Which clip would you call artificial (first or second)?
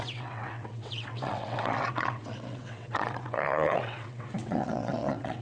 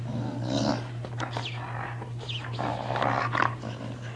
first